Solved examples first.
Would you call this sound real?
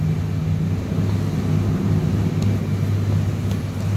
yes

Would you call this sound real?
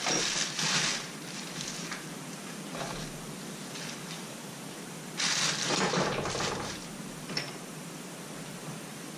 no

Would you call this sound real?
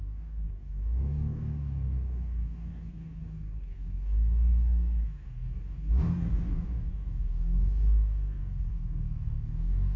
no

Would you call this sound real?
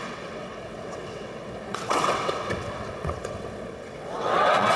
no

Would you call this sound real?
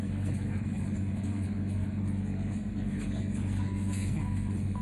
no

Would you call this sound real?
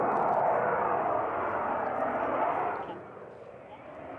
yes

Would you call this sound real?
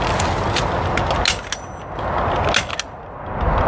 yes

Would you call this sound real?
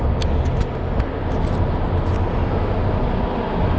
yes